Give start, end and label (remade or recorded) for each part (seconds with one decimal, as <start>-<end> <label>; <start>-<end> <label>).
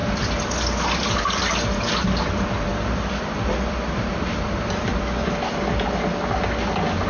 0.0-1.5 remade; 1.5-2.7 recorded; 2.7-5.7 remade; 5.7-7.1 recorded